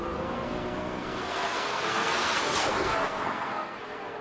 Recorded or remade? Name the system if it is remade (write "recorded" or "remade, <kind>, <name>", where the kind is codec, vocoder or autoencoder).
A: remade, codec, SNAC